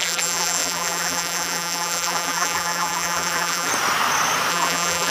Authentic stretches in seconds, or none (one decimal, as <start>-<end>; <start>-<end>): 3.7-4.5